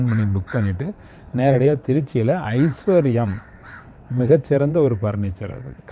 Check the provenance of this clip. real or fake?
fake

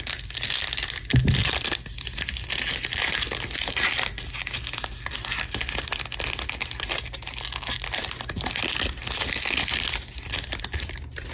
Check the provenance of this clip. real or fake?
real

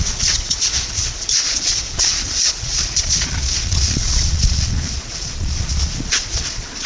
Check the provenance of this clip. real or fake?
fake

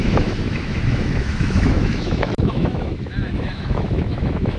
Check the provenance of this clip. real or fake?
fake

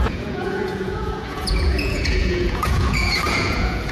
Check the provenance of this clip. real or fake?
fake